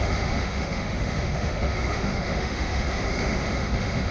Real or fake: fake